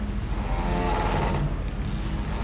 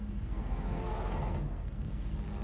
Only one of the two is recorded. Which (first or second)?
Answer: first